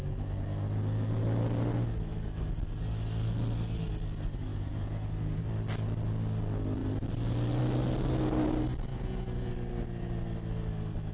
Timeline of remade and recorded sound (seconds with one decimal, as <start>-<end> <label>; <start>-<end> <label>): 0.0-4.5 recorded; 4.5-5.4 remade; 5.4-8.9 recorded; 8.9-9.5 remade; 9.5-11.1 recorded